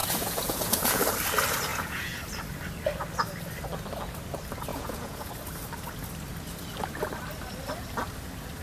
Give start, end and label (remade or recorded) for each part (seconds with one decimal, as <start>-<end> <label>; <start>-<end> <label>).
0.0-1.0 remade; 1.0-1.7 recorded; 1.7-2.2 remade; 2.2-4.7 recorded; 4.7-5.3 remade; 5.3-8.6 recorded